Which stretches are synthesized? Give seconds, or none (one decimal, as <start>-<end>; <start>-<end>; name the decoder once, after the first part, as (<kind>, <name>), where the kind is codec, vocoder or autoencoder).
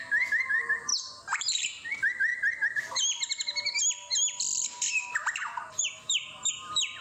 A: 0.9-1.9 (vocoder, BigVGAN v2)